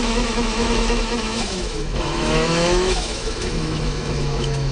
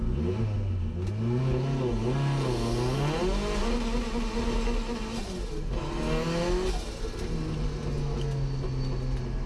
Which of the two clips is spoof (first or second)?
first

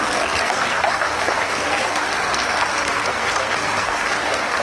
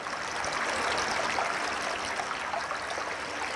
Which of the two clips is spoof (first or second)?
first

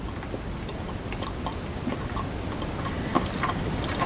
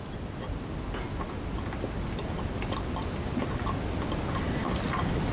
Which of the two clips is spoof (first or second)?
first